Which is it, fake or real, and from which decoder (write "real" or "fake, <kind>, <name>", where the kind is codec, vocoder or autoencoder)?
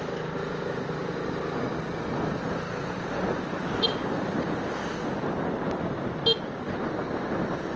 real